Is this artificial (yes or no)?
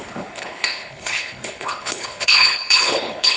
yes